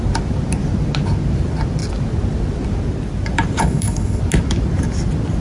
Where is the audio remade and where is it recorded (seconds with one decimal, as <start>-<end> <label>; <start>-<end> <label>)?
0.0-3.6 recorded; 3.6-4.2 remade; 4.2-5.4 recorded